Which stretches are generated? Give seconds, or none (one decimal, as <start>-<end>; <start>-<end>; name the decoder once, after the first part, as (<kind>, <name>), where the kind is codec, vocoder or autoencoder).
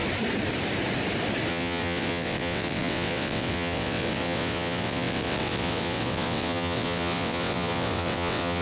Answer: 1.5-8.6 (vocoder, WaveNeXt)